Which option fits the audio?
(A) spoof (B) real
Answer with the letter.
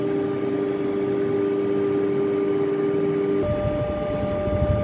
B